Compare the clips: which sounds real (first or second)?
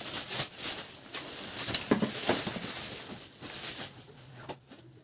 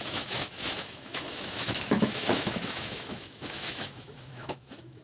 first